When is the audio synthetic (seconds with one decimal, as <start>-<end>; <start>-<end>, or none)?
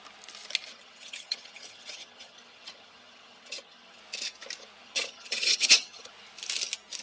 0.7-4.0; 4.8-6.1